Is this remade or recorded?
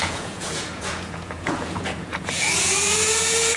remade